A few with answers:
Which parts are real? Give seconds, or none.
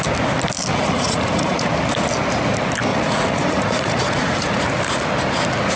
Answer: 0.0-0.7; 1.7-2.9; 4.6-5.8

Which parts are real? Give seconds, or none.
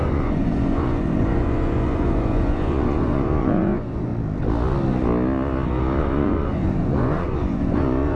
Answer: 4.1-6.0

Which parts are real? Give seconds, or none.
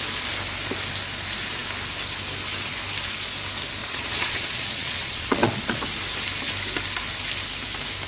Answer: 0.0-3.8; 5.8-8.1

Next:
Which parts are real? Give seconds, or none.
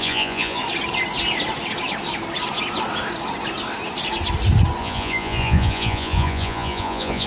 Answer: 0.6-4.8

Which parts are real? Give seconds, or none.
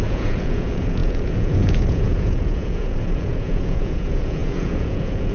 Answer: none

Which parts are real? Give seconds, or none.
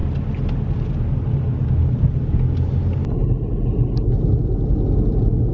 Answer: 0.0-5.5